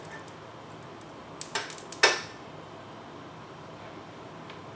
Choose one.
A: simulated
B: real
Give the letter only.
B